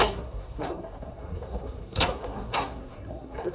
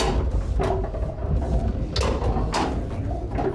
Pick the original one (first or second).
second